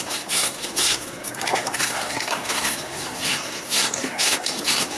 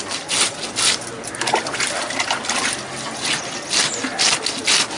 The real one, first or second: second